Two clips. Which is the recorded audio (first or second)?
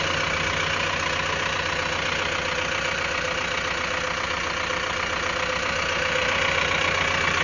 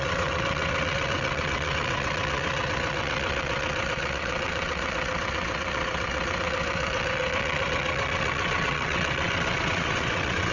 first